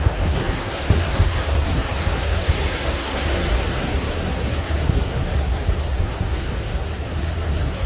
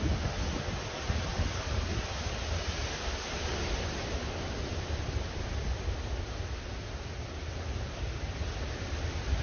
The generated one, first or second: first